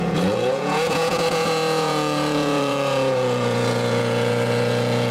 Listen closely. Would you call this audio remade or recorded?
remade